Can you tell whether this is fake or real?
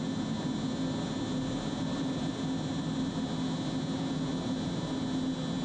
real